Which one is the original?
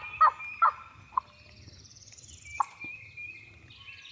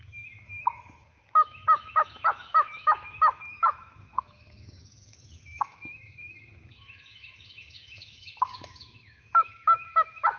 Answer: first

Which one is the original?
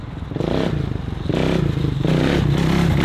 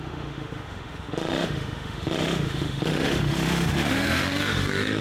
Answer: first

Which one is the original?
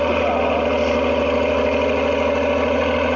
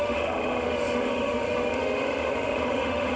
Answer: first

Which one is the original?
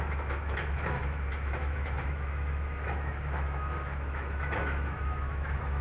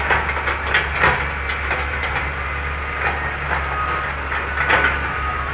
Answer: second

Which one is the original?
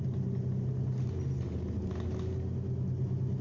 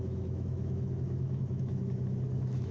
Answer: first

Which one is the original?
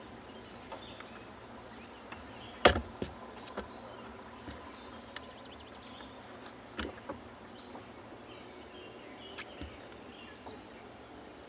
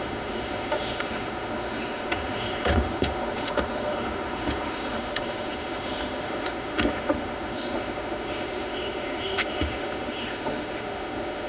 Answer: first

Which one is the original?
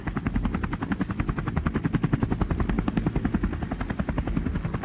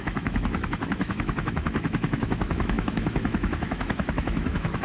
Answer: first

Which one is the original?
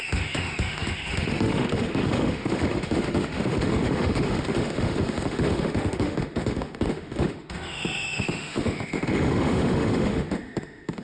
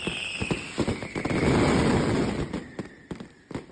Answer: second